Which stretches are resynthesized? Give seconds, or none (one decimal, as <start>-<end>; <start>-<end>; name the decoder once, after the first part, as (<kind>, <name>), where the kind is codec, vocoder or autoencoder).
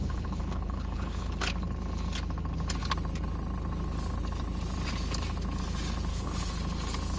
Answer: 0.0-1.3 (codec, HILCodec); 6.1-6.6